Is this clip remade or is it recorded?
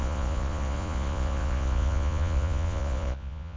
remade